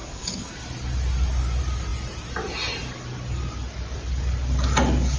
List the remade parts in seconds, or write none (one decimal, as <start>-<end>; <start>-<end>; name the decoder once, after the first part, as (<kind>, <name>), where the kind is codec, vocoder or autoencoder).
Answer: 0.0-0.5 (codec, DAC)

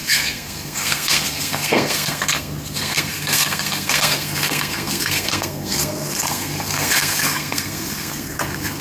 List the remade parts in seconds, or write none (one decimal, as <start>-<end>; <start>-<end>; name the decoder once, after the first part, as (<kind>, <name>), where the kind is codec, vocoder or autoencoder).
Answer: 0.0-8.8 (codec, SNAC)

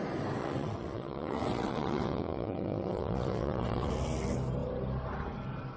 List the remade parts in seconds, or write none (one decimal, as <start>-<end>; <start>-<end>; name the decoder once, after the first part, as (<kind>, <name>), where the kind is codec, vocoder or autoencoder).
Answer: 0.4-3.9 (vocoder, WaveNeXt)

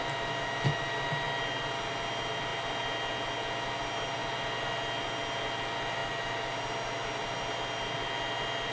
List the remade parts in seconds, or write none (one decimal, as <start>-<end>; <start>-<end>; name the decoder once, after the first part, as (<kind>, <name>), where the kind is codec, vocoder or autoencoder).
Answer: none

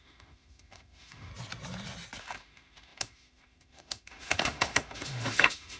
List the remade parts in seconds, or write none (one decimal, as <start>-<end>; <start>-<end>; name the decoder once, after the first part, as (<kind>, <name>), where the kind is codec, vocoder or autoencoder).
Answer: 0.0-1.3 (autoencoder, DAC-VAE); 2.2-5.8